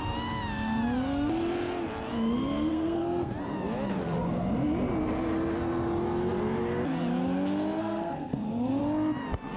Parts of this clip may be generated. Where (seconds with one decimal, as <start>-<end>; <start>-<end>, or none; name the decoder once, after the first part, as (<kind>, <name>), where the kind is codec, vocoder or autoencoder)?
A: 2.7-3.3 (codec, SNAC); 7.8-8.8